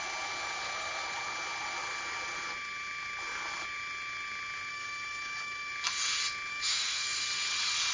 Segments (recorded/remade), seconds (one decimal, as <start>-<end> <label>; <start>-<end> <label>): 0.0-4.7 recorded; 4.7-5.7 remade; 5.7-6.5 recorded; 6.5-7.2 remade; 7.2-7.9 recorded

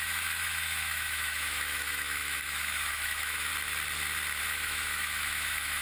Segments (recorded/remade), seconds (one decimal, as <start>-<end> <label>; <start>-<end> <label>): 0.0-3.5 remade; 3.5-4.4 recorded; 4.4-5.8 remade

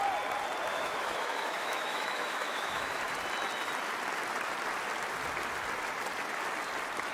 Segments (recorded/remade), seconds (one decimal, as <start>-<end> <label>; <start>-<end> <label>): 0.0-0.7 recorded; 0.7-3.0 remade; 3.0-7.1 recorded

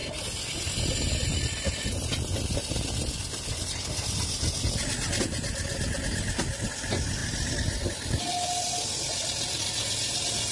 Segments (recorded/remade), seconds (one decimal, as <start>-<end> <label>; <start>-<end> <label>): 0.0-10.5 recorded

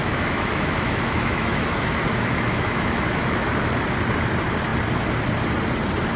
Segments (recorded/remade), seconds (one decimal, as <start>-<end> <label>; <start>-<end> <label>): 0.0-3.7 remade; 3.7-6.2 recorded

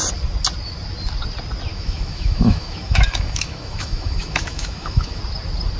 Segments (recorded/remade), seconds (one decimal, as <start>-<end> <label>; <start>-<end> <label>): 0.0-1.7 recorded; 1.7-5.2 remade; 5.2-5.8 recorded